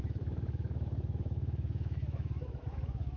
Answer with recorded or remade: remade